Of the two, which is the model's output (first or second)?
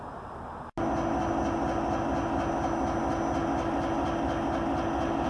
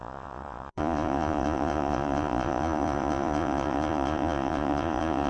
second